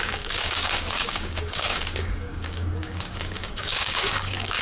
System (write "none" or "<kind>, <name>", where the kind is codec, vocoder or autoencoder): codec, DAC